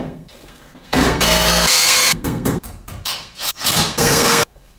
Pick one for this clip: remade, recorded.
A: remade